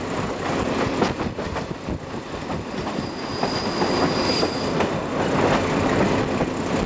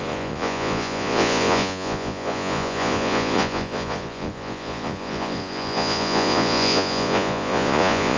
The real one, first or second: first